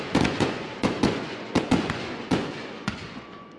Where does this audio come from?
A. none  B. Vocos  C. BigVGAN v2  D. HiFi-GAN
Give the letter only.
B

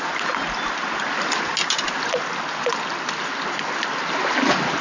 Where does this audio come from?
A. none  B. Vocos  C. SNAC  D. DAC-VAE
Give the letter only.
A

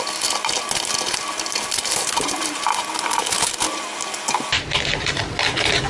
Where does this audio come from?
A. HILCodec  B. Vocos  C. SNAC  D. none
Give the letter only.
D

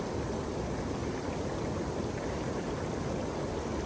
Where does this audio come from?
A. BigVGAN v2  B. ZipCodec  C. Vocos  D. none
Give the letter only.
D